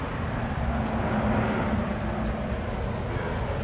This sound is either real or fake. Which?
real